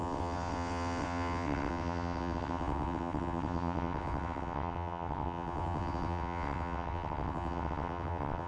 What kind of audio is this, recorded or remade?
remade